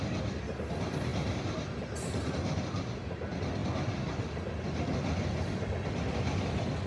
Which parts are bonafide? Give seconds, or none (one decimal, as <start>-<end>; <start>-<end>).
0.0-6.9